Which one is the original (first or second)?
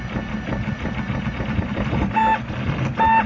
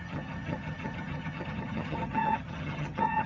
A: first